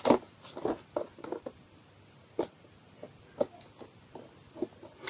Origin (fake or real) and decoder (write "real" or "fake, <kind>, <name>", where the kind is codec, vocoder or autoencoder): real